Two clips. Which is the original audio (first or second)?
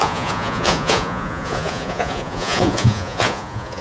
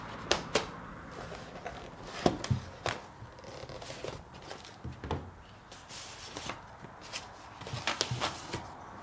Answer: second